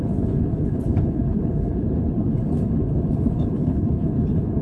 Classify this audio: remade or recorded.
remade